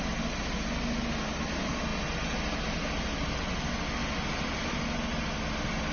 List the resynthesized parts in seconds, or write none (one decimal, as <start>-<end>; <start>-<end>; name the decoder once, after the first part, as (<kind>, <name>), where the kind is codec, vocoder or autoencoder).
none